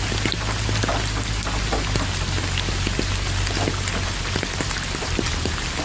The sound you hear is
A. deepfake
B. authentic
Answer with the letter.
B